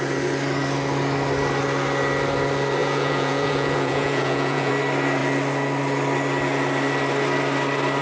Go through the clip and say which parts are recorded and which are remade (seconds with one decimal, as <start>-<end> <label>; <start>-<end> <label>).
0.0-2.8 recorded; 2.8-4.7 remade; 4.7-8.0 recorded

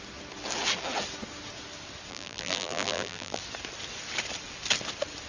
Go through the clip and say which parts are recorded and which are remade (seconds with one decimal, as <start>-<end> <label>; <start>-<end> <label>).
0.0-2.1 recorded; 2.1-3.4 remade; 3.4-5.3 recorded

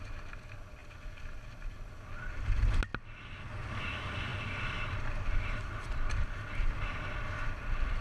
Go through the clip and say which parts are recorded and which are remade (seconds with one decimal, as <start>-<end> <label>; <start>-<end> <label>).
0.0-8.0 recorded

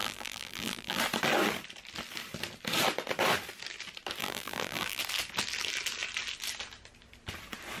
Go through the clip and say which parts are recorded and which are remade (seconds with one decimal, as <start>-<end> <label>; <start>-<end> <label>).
0.0-1.0 remade; 1.0-4.2 recorded; 4.2-5.0 remade; 5.0-7.8 recorded